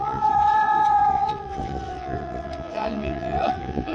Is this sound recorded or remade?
remade